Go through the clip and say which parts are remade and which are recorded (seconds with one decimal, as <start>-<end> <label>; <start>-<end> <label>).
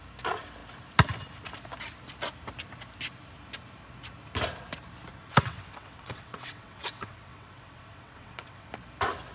0.0-5.2 recorded; 5.2-8.7 remade; 8.7-9.3 recorded